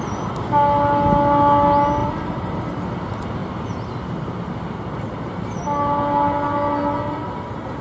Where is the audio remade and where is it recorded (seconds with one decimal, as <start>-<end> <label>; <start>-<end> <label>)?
0.0-2.0 recorded; 2.0-2.8 remade; 2.8-7.8 recorded